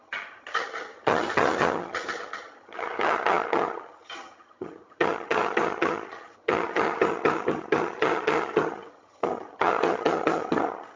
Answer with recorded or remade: remade